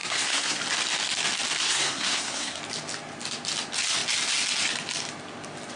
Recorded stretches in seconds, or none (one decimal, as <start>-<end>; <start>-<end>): 0.6-1.6; 2.6-5.8